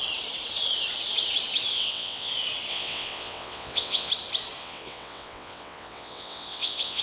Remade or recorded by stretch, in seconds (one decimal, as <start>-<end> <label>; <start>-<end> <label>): 0.0-1.7 recorded; 1.7-2.3 remade; 2.3-2.7 recorded; 2.7-4.1 remade; 4.1-4.6 recorded; 4.6-7.0 remade